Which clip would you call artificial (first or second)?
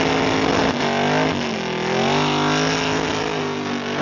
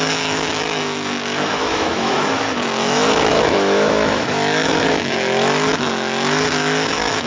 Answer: second